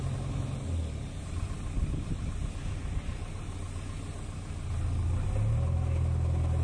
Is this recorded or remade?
recorded